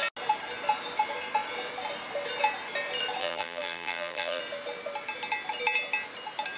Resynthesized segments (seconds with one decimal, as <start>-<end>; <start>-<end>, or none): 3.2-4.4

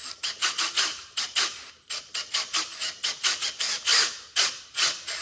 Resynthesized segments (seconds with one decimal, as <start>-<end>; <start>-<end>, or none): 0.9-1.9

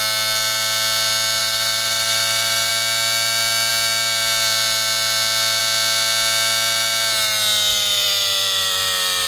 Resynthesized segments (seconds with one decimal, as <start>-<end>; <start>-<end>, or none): 1.4-2.7; 7.7-9.3

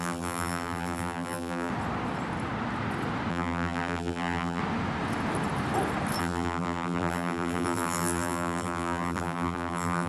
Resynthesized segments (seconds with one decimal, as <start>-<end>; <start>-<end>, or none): 0.0-1.7; 3.3-4.6; 6.2-10.1